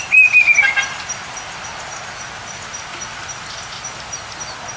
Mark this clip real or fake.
real